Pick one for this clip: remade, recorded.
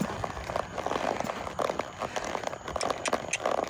recorded